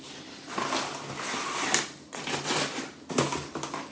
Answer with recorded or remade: recorded